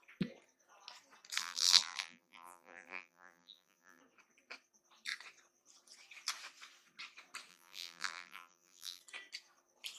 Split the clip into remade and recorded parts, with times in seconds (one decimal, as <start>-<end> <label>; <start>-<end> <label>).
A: 0.0-1.4 recorded; 1.4-4.0 remade; 4.0-7.5 recorded; 7.5-9.0 remade; 9.0-10.0 recorded